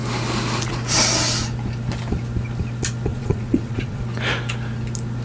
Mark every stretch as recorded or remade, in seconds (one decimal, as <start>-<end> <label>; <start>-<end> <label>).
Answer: 0.0-3.1 recorded; 3.1-4.0 remade; 4.0-5.2 recorded